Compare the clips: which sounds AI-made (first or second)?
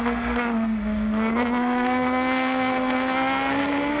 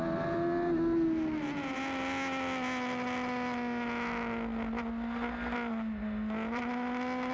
first